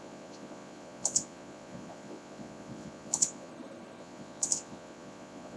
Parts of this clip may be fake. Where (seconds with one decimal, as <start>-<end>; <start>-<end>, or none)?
0.0-3.5; 4.0-5.6

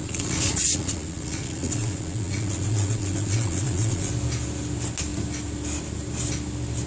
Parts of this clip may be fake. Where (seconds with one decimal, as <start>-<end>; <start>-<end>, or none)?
0.0-4.1

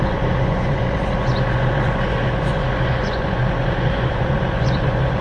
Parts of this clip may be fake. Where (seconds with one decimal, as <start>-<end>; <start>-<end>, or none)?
0.0-5.2

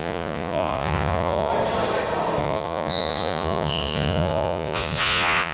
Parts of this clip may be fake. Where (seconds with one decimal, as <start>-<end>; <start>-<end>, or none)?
0.0-1.5; 2.4-5.5

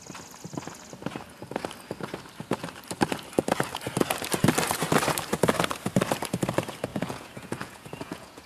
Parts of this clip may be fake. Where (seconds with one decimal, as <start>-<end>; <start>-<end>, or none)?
6.9-8.5

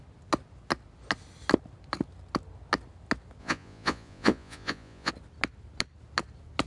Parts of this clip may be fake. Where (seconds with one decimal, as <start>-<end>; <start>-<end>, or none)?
3.4-5.1

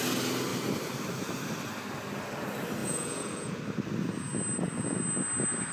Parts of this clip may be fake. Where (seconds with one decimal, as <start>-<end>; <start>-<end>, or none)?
2.8-3.6